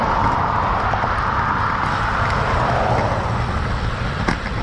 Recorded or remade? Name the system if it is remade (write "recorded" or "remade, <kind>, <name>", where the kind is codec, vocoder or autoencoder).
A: remade, vocoder, BigVGAN v2